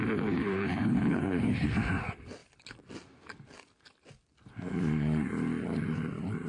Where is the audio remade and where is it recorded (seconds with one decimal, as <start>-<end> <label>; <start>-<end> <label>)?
0.0-0.4 recorded; 0.4-1.7 remade; 1.7-6.5 recorded

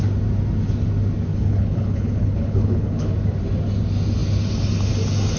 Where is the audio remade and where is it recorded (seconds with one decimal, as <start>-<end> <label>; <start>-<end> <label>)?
0.0-1.3 recorded; 1.3-3.1 remade; 3.1-5.4 recorded

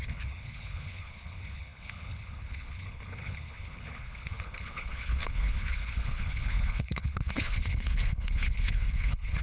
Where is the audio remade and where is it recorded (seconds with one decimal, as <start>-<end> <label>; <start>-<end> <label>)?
0.0-9.4 remade

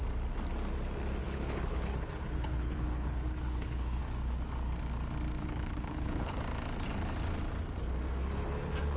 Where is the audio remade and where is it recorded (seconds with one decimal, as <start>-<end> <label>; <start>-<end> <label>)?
0.0-1.2 recorded; 1.2-4.0 remade; 4.0-5.4 recorded; 5.4-6.4 remade; 6.4-9.0 recorded

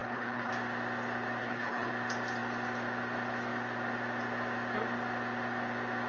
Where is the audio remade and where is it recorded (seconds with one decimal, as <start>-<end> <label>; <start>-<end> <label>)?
0.0-0.5 remade; 0.5-1.4 recorded; 1.4-1.9 remade; 1.9-6.1 recorded

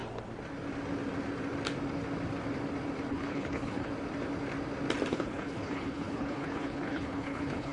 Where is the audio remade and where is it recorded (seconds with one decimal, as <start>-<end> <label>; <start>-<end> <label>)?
0.0-3.1 recorded; 3.1-3.9 remade; 3.9-5.1 recorded; 5.1-7.7 remade